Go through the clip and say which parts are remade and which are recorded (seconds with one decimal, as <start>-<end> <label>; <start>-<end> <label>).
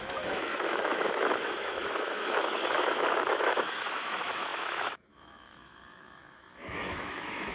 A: 0.0-7.5 remade